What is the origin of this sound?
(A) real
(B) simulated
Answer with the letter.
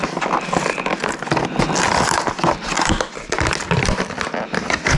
A